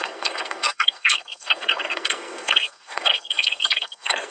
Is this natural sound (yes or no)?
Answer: no